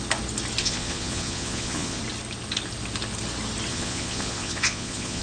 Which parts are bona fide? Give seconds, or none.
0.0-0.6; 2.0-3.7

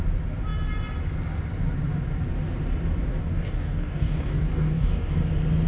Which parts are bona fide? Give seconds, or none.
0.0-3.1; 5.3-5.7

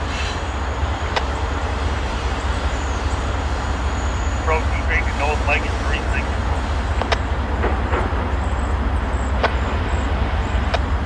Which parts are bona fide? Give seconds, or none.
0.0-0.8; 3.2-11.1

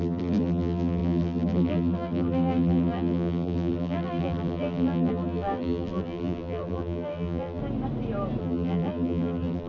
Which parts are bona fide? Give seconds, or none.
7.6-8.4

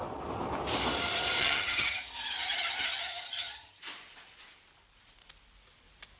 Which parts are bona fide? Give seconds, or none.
0.0-1.4; 3.8-6.2

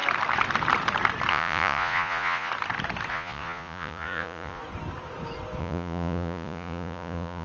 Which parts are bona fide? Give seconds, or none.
0.0-1.3; 2.5-3.1; 4.6-5.6